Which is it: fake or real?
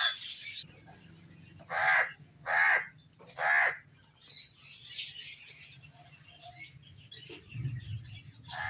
real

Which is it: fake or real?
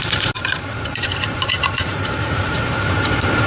fake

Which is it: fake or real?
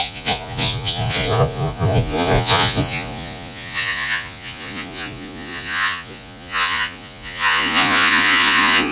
fake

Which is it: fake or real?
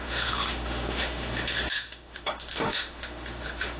fake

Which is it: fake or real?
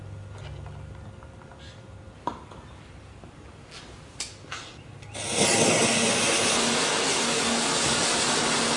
real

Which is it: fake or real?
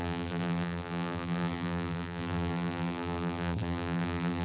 fake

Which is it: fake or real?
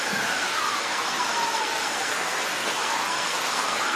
fake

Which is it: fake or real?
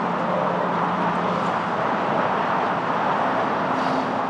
real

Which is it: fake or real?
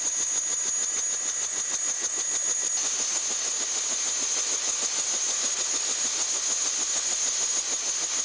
real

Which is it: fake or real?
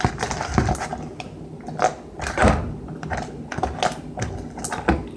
real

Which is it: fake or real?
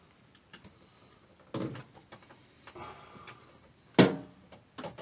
real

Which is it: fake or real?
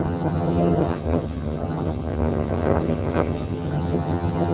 fake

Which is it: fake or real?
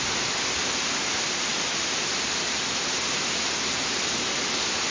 real